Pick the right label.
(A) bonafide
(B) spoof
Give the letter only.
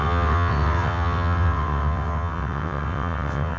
B